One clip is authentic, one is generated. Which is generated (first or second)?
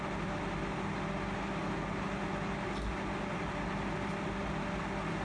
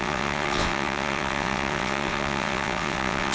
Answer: second